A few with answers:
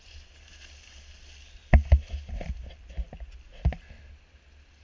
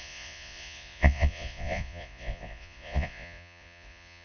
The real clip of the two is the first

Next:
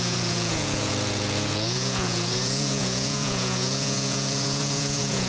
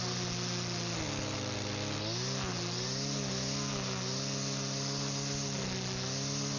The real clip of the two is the second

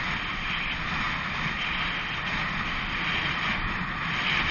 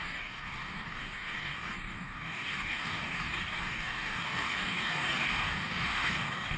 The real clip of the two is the first